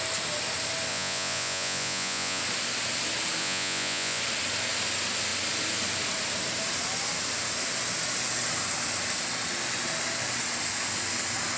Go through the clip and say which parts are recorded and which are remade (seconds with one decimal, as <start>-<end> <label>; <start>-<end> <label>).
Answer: 0.0-0.9 recorded; 0.9-2.4 remade; 2.4-3.4 recorded; 3.4-4.2 remade; 4.2-11.6 recorded